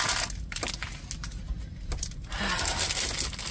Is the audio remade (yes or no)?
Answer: no